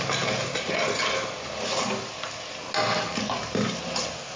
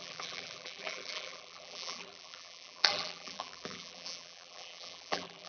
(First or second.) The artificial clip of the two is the second